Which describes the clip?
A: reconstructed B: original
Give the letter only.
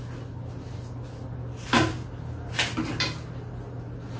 B